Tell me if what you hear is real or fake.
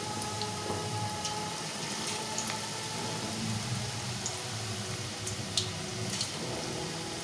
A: real